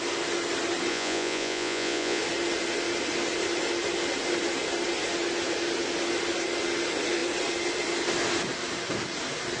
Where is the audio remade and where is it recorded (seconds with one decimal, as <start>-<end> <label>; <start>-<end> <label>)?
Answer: 0.0-0.9 recorded; 0.9-2.2 remade; 2.2-9.6 recorded